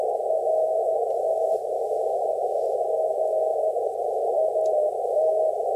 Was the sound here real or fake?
real